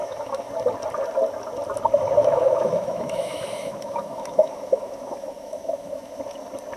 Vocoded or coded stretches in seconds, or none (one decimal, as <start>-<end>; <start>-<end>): 0.0-0.5; 2.2-6.2